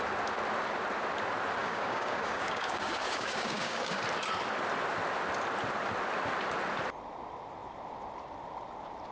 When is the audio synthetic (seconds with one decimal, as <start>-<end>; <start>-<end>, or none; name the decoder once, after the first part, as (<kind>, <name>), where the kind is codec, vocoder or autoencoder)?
1.6-4.0 (codec, DAC)